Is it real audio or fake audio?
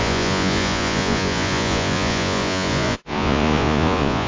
fake